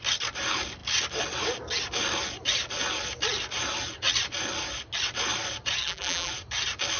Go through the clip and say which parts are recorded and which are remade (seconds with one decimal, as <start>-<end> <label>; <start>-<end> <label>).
0.0-5.8 recorded; 5.8-6.3 remade; 6.3-7.0 recorded